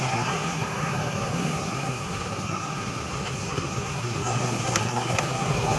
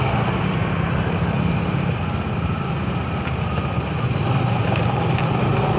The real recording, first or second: second